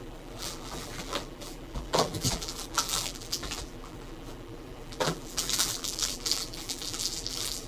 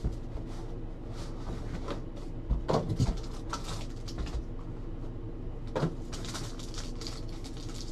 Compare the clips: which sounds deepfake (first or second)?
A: first